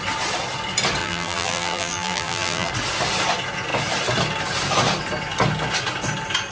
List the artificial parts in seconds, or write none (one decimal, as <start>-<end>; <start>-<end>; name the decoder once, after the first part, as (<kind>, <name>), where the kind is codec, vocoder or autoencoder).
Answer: 1.0-2.7 (vocoder, BigVGAN v2)